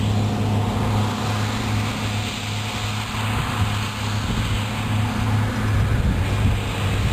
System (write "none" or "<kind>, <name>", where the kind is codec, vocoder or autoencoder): none